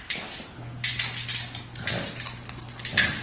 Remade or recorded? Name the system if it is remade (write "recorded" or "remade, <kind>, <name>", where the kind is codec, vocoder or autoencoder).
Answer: recorded